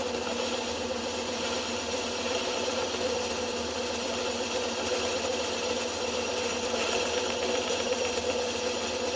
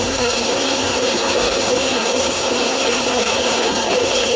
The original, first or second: first